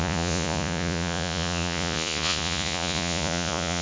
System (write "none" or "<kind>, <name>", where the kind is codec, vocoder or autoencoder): vocoder, Vocos